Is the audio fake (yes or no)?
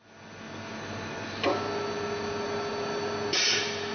no